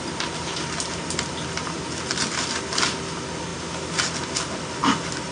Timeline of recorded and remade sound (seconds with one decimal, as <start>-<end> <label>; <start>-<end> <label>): 0.0-5.3 recorded